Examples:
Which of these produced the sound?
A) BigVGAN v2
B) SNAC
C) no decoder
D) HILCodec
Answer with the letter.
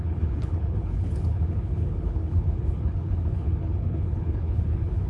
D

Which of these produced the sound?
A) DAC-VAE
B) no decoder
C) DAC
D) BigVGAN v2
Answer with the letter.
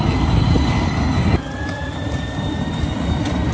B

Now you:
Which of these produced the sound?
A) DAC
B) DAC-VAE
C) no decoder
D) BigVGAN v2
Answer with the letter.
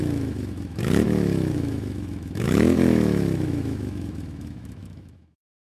B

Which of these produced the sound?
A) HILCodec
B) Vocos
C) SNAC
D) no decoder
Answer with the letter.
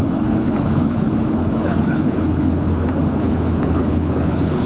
A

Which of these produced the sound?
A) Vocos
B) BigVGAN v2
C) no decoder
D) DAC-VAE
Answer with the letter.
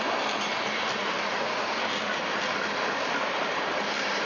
B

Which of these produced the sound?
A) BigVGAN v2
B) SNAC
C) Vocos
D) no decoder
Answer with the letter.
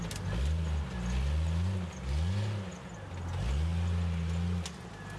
D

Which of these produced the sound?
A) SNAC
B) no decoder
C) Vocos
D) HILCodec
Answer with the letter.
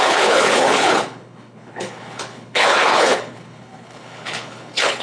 D